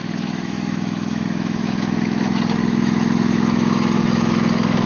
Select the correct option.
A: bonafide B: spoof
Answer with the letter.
B